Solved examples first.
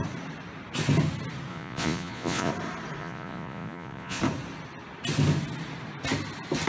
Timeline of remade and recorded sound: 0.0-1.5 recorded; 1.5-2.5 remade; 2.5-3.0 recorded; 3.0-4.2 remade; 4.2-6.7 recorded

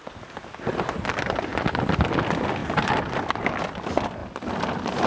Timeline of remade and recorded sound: 0.0-5.1 recorded

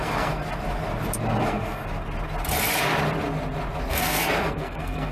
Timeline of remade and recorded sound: 0.0-0.4 remade; 0.4-1.4 recorded; 1.4-1.8 remade; 1.8-3.9 recorded; 3.9-5.1 remade

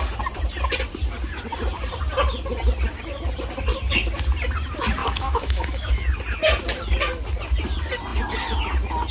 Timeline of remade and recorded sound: 0.0-5.0 recorded; 5.0-5.9 remade; 5.9-9.1 recorded

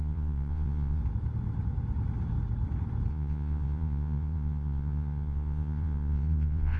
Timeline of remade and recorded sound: 0.0-1.0 remade; 1.0-3.1 recorded; 3.1-6.8 remade

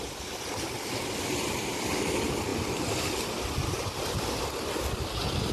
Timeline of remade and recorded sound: 0.0-5.5 recorded

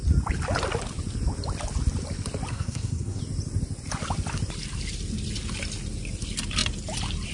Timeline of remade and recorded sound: 0.0-2.5 recorded; 2.5-3.2 remade; 3.2-7.3 recorded